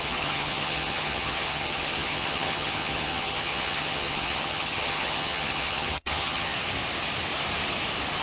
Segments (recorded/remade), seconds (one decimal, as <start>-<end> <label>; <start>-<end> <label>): 0.0-6.5 remade; 6.5-8.2 recorded